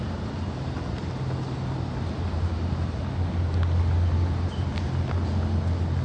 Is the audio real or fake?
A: real